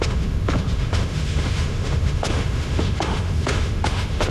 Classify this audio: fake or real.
fake